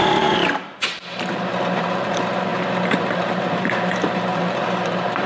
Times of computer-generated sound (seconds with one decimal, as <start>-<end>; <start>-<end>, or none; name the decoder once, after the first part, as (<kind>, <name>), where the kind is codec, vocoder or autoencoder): 0.0-2.5 (vocoder, BigVGAN v2); 3.0-5.3